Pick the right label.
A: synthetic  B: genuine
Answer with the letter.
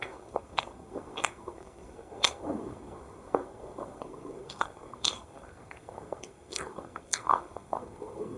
A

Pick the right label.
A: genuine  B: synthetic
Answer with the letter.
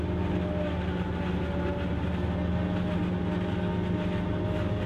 A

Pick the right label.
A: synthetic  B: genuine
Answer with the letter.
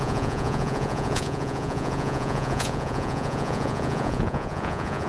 A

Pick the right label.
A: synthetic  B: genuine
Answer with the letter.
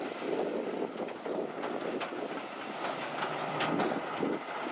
B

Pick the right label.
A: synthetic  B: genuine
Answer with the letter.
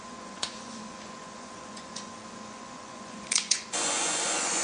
A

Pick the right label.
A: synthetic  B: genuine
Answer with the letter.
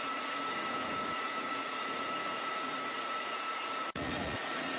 A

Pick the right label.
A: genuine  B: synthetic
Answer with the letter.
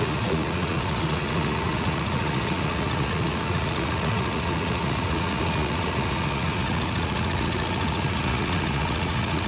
B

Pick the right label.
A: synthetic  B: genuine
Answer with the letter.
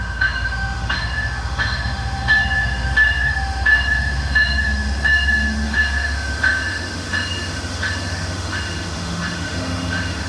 A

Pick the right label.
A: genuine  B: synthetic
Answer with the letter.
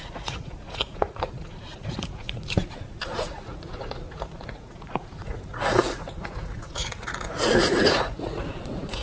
B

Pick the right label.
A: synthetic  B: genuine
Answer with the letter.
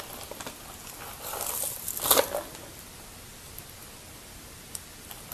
B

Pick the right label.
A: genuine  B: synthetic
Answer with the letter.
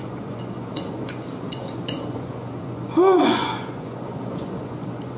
B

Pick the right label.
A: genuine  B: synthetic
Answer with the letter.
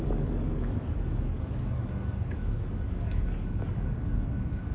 B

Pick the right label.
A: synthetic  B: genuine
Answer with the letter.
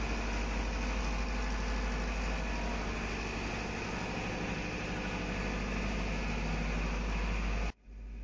B